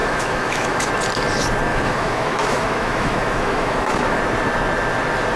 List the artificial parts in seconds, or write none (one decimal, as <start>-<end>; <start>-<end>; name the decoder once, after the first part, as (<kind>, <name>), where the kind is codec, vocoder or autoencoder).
0.0-0.9 (autoencoder, DAC-VAE); 1.7-4.2